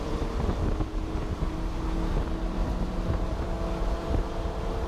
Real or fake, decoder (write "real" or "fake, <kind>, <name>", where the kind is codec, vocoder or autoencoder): fake, vocoder, BigVGAN v2